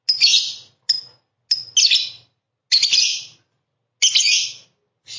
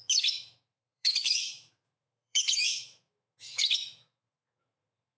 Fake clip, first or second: second